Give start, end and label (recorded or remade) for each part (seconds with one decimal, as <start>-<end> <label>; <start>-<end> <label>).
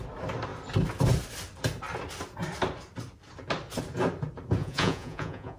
0.0-4.6 recorded; 4.6-5.6 remade